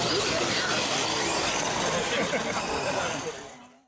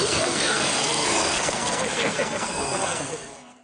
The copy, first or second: second